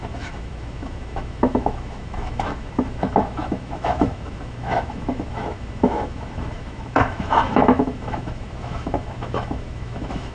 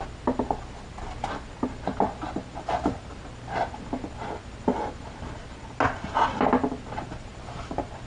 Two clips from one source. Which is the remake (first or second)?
first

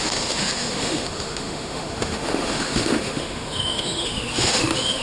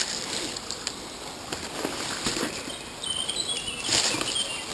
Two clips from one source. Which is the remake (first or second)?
first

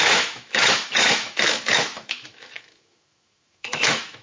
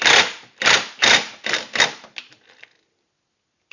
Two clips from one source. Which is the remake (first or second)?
first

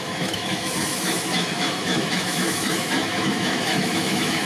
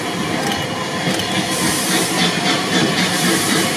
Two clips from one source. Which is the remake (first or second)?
first